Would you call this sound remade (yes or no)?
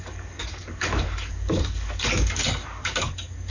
yes